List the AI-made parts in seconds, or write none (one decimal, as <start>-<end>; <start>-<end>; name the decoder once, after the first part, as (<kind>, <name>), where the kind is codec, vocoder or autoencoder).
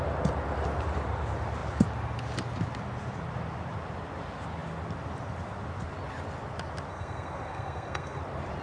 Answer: 6.9-8.2 (codec, SNAC)